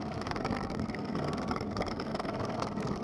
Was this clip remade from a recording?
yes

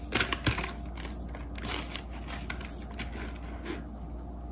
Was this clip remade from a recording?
no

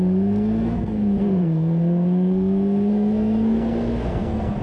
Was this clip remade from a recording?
yes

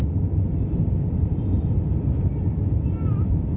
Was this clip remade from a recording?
no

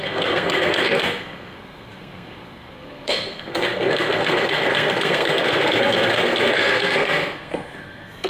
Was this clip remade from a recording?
yes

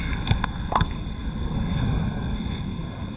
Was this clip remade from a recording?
yes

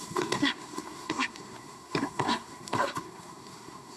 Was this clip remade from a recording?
yes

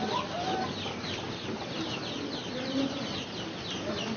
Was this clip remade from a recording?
no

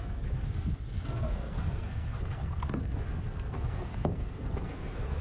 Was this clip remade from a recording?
yes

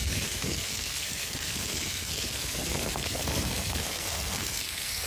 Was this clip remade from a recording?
yes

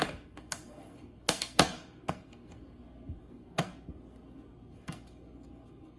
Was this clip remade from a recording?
yes